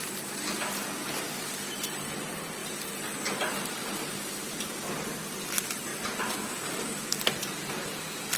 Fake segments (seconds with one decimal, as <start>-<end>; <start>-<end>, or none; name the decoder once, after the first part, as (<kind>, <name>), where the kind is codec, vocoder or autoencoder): none